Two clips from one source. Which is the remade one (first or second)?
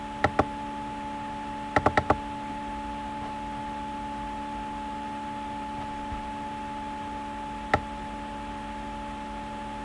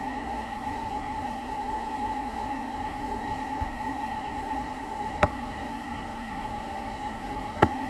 second